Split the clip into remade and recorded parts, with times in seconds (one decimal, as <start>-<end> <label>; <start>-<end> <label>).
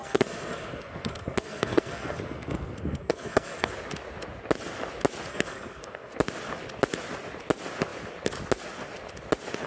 0.0-3.7 remade; 3.7-5.3 recorded; 5.3-6.1 remade; 6.1-9.7 recorded